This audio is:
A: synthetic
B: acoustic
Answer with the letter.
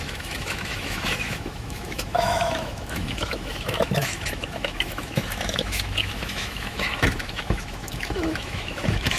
A